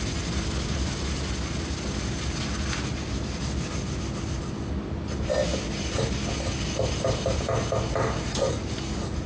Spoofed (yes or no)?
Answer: no